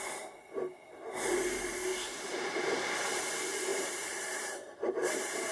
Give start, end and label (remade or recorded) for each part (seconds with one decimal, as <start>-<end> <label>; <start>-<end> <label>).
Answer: 0.0-1.9 recorded; 1.9-2.6 remade; 2.6-3.7 recorded; 3.7-5.5 remade

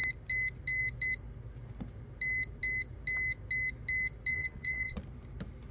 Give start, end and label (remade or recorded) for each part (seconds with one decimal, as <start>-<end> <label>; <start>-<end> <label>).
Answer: 0.0-4.3 recorded; 4.3-5.0 remade; 5.0-5.7 recorded

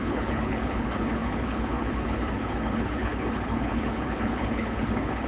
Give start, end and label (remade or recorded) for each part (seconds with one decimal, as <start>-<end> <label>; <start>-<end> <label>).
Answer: 0.0-5.3 remade

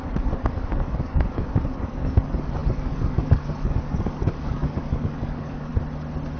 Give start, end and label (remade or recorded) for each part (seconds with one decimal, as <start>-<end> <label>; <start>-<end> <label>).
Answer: 0.0-5.7 remade; 5.7-6.4 recorded

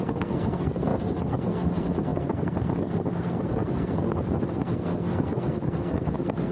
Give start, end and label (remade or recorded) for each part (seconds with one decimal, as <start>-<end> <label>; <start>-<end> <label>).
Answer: 0.0-6.5 remade

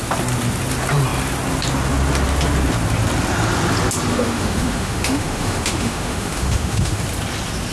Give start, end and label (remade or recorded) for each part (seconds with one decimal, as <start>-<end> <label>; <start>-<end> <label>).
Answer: 0.0-4.1 recorded; 4.1-7.0 remade; 7.0-7.7 recorded

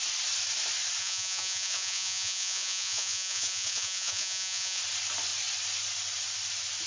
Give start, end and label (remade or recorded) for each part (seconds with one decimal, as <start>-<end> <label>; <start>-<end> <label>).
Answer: 0.0-1.0 recorded; 1.0-4.8 remade; 4.8-6.9 recorded